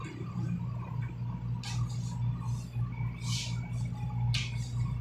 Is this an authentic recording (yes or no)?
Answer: yes